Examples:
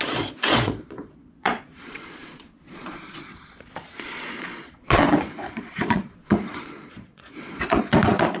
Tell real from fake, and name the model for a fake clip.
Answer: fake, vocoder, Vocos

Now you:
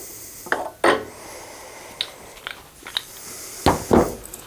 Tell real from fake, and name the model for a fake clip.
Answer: real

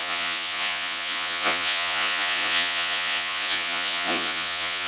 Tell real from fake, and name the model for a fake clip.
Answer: fake, vocoder, Vocos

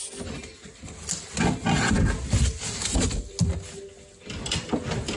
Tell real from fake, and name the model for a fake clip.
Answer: real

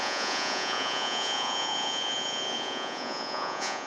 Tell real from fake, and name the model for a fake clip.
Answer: fake, vocoder, Vocos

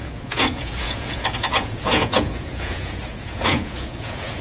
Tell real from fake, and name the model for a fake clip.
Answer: fake, vocoder, Vocos